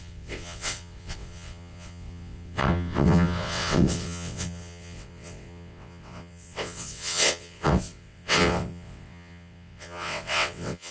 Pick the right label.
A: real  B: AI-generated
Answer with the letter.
B